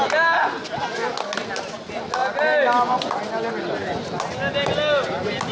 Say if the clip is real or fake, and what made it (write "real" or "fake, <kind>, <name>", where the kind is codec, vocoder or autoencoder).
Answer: real